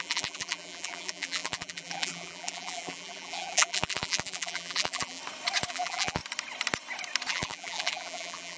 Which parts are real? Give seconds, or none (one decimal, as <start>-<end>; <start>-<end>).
5.2-5.7; 6.2-7.3